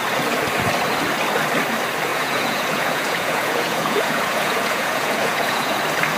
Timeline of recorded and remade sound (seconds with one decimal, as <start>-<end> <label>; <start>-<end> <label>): 0.0-2.1 recorded; 2.1-5.8 remade; 5.8-6.2 recorded